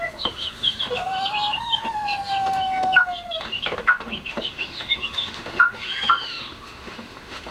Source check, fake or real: fake